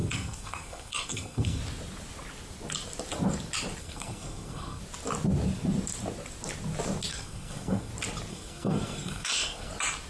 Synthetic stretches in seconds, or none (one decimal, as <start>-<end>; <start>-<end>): 0.0-1.6; 3.8-4.8; 7.1-7.9; 8.3-9.7